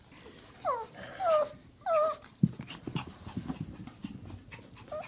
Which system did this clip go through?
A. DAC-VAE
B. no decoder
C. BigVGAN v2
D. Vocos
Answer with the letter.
B